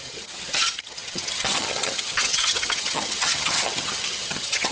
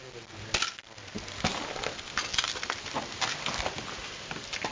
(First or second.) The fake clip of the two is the first